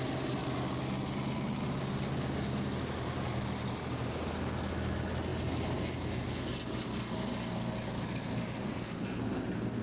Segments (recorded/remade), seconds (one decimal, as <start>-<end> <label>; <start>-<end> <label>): 0.0-9.8 recorded